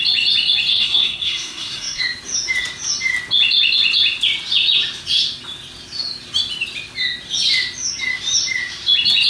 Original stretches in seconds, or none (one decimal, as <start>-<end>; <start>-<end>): 0.0-0.7; 2.0-9.3